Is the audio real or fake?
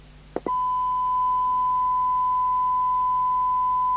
real